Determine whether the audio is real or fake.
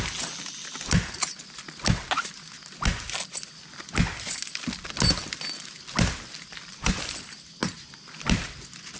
real